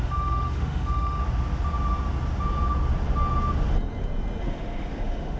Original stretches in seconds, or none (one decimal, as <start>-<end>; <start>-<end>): 1.2-4.4